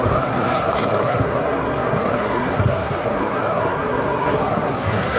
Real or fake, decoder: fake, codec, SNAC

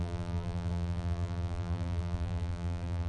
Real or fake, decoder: fake, vocoder, BigVGAN v2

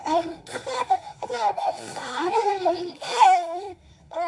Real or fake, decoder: fake, codec, SNAC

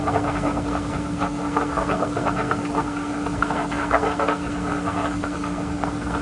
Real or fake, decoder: fake, codec, SNAC